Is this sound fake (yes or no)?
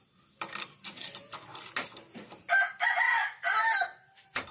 no